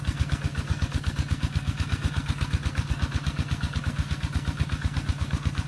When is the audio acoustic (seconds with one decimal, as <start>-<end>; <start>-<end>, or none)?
none